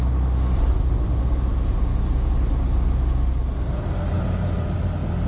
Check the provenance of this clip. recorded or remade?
recorded